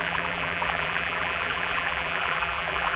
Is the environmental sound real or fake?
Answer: fake